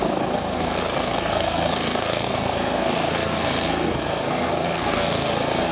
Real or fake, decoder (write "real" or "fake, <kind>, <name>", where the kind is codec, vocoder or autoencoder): fake, codec, SNAC